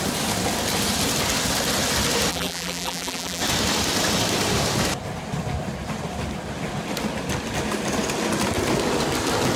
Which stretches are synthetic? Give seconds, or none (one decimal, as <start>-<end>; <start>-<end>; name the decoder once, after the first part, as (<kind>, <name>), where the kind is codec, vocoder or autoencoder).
2.3-3.4 (vocoder, BigVGAN v2)